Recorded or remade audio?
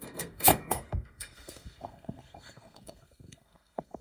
remade